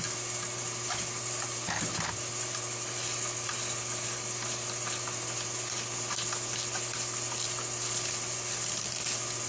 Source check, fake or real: real